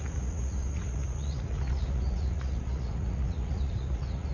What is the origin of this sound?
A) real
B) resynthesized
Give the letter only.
B